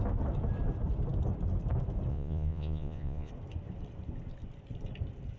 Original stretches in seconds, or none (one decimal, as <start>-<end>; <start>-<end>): 0.0-2.1; 3.3-5.4